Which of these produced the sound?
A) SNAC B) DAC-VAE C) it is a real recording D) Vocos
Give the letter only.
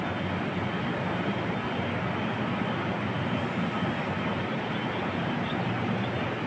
C